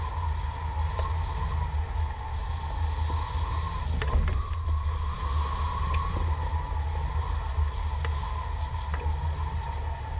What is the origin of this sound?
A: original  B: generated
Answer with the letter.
A